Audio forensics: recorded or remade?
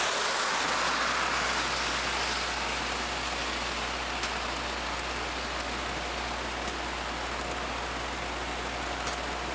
recorded